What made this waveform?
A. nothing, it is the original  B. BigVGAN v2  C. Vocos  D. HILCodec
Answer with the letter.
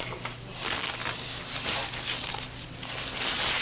A